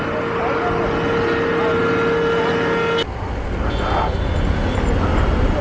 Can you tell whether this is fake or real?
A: real